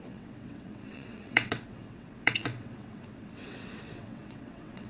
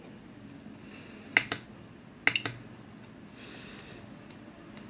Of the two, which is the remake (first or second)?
first